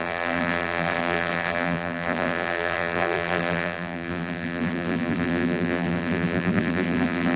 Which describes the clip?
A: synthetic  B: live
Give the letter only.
A